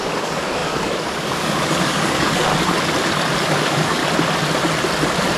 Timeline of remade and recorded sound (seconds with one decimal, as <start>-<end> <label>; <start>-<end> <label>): 0.0-2.5 remade; 2.5-3.5 recorded; 3.5-4.0 remade; 4.0-5.4 recorded